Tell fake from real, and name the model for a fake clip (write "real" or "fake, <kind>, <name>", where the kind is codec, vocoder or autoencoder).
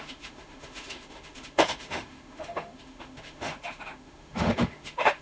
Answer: fake, autoencoder, DAC-VAE